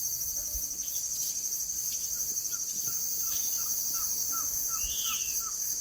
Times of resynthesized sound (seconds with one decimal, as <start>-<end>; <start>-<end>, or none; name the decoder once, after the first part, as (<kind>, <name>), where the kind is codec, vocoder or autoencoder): none